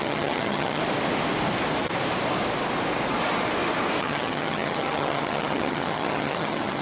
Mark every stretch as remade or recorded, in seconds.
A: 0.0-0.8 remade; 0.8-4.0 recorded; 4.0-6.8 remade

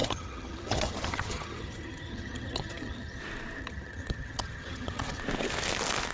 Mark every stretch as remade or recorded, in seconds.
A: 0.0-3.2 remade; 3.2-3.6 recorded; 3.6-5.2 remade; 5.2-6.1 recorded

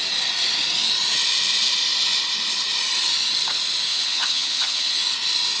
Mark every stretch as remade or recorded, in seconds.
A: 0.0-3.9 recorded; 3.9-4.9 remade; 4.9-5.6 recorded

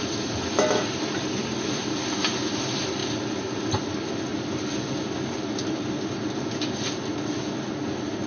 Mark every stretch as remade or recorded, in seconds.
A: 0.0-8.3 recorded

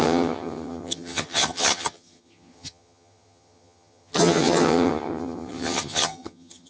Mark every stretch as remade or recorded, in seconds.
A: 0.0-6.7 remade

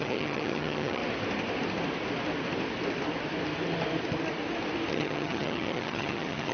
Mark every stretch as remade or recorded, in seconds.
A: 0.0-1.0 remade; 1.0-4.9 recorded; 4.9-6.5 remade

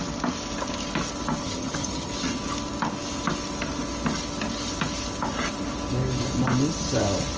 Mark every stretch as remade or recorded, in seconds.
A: 0.0-1.4 recorded; 1.4-2.1 remade; 2.1-7.4 recorded

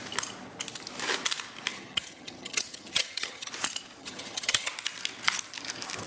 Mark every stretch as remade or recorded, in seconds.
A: 0.0-1.7 recorded; 1.7-3.5 remade; 3.5-4.0 recorded; 4.0-4.7 remade; 4.7-6.1 recorded